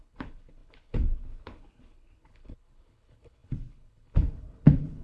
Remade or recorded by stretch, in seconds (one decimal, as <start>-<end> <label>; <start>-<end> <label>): 0.0-5.0 remade